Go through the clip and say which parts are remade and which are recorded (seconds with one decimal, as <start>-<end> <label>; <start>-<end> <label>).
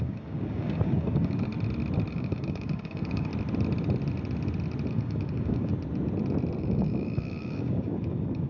0.0-1.5 remade; 1.5-2.1 recorded; 2.1-3.3 remade; 3.3-4.9 recorded; 4.9-5.7 remade; 5.7-6.6 recorded; 6.6-8.5 remade